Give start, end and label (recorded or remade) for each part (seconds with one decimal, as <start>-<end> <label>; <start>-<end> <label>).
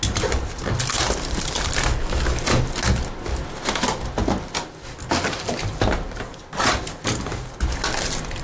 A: 0.0-1.9 recorded; 1.9-2.4 remade; 2.4-8.4 recorded